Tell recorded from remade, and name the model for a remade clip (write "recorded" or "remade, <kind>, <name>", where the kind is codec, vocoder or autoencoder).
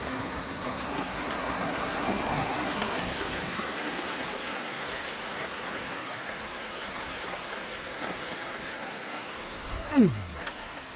remade, codec, SNAC